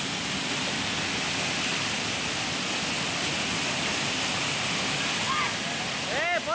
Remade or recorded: recorded